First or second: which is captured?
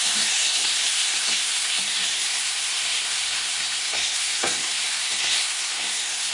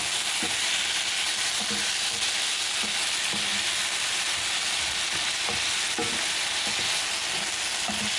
second